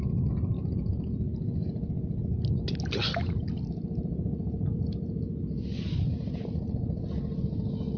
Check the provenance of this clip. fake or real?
real